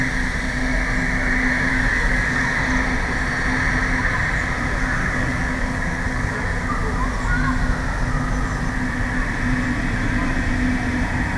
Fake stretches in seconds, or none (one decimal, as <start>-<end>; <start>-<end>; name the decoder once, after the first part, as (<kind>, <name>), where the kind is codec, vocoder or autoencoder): 1.7-2.5 (codec, DAC); 5.0-6.7